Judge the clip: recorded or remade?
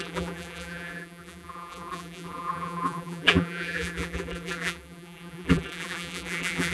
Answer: remade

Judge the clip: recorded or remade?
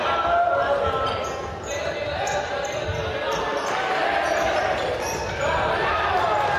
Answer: recorded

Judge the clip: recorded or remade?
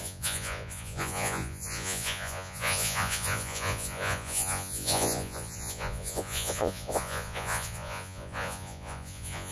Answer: remade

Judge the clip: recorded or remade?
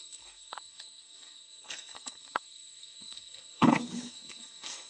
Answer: remade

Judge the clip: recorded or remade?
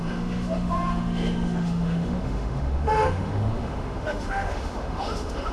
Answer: remade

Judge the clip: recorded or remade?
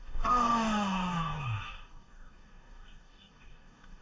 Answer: remade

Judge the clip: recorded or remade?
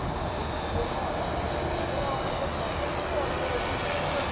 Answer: recorded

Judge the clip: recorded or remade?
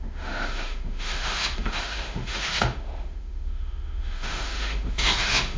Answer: remade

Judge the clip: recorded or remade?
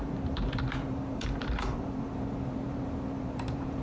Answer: remade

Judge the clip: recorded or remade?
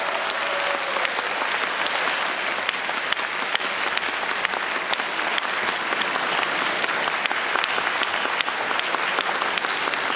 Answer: recorded